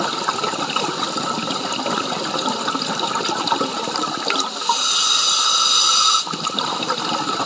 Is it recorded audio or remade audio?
recorded